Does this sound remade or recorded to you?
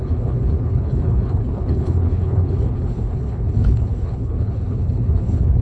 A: remade